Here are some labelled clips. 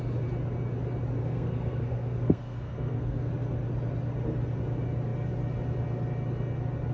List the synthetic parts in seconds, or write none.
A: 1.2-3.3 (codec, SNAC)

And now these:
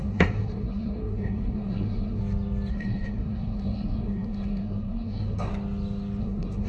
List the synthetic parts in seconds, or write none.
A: 0.0-2.2 (codec, SNAC); 2.7-5.5; 6.2-6.7

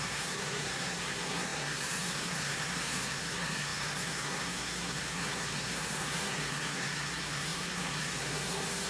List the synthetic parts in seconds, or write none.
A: 0.0-8.9 (codec, SNAC)

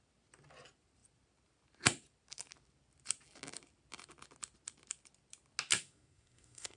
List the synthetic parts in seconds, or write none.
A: 5.7-6.8 (codec, SNAC)